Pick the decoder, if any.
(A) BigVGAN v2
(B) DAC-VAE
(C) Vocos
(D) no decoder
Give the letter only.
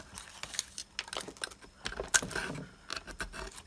D